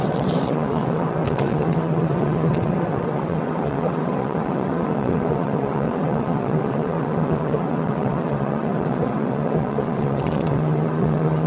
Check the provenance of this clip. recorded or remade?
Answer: remade